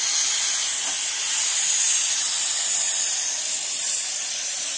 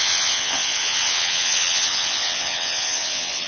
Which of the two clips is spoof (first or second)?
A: second